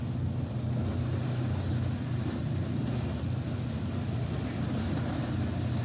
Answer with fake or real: real